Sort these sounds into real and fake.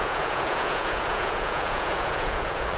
fake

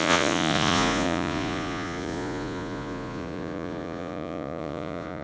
fake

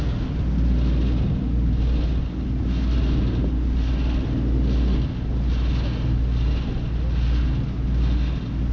real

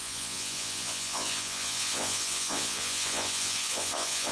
fake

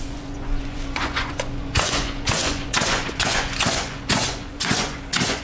fake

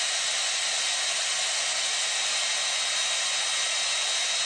real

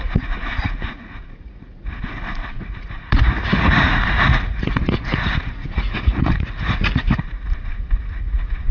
fake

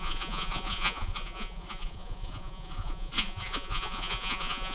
fake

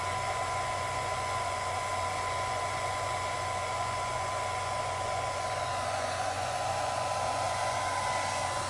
fake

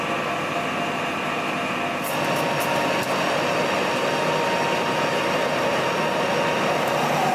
real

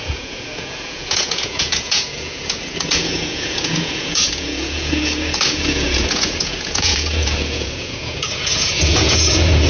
fake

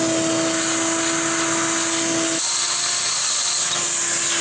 real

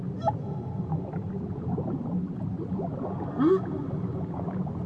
real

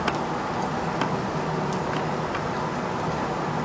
real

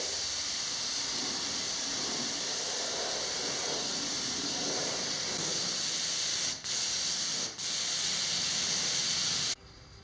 real